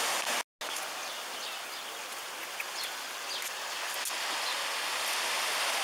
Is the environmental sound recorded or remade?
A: recorded